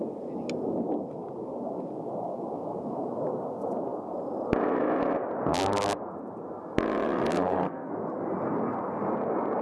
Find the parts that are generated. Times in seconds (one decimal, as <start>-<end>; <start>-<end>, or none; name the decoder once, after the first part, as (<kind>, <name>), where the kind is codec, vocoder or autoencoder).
7.3-7.9 (codec, SNAC)